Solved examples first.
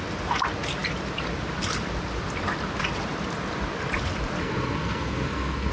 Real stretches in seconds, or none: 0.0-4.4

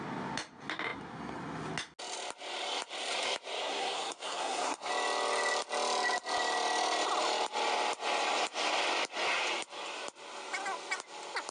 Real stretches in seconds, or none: 0.0-3.6; 4.9-11.5

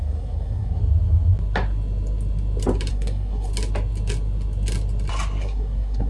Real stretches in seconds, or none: 0.8-2.9; 3.5-5.4

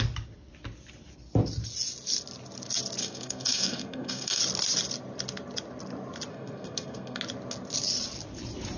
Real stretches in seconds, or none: 0.0-3.0; 4.4-6.3; 7.2-8.8

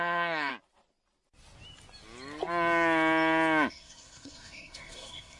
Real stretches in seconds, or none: 0.5-3.7

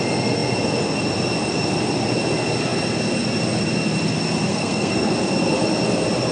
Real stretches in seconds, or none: 0.0-4.5; 5.1-6.3